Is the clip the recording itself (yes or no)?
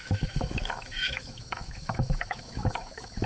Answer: no